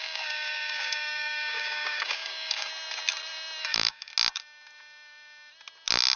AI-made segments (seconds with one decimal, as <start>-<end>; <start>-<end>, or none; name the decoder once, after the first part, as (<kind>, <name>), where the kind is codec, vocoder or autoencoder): 0.0-2.7 (codec, DAC); 3.6-4.1